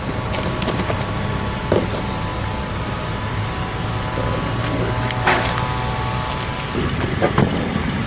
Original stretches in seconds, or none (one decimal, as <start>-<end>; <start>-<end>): 0.0-8.1